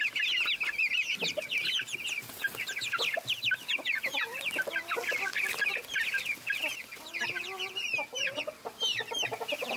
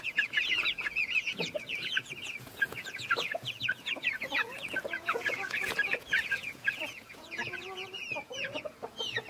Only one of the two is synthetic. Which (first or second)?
second